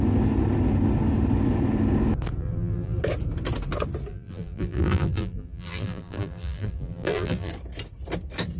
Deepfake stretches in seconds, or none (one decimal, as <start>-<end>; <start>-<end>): 2.4-3.0; 4.1-7.5